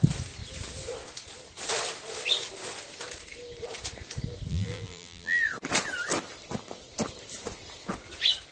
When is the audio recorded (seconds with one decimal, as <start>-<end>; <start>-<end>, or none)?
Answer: 0.0-4.5; 5.4-8.5